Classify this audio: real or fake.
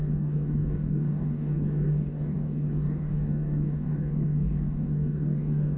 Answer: fake